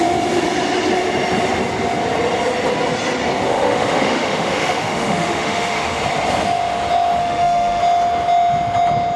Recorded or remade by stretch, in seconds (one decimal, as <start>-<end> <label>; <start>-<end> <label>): 0.0-3.5 recorded; 3.5-6.0 remade; 6.0-7.2 recorded; 7.2-7.8 remade; 7.8-9.2 recorded